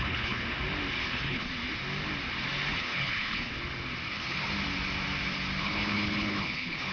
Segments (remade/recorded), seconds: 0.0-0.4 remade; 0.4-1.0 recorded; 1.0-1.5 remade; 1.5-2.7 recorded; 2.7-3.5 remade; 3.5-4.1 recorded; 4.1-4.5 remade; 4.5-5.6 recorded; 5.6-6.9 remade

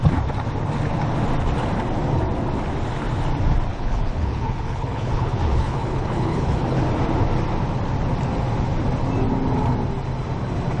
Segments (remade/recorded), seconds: 0.0-3.7 recorded; 3.7-6.8 remade; 6.8-10.8 recorded

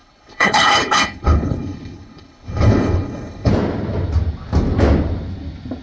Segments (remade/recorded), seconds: 0.0-3.5 remade; 3.5-5.8 recorded

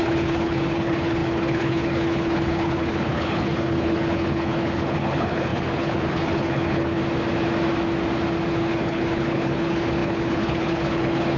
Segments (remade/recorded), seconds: 0.0-7.0 remade; 7.0-8.5 recorded; 8.5-11.4 remade

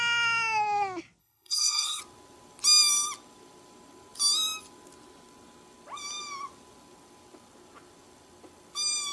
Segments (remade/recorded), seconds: 0.0-1.2 recorded; 1.2-2.0 remade; 2.0-9.1 recorded

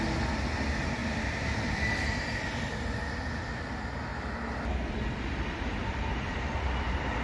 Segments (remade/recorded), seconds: 0.0-7.2 recorded